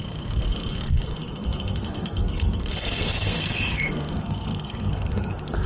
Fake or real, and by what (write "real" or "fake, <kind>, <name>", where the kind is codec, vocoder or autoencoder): fake, codec, SNAC